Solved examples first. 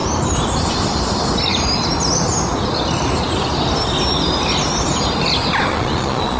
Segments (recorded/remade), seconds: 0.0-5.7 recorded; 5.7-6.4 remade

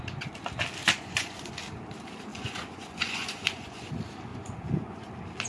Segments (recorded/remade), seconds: 0.0-0.8 recorded; 0.8-1.5 remade; 1.5-2.3 recorded; 2.3-3.9 remade; 3.9-4.3 recorded; 4.3-5.1 remade; 5.1-5.5 recorded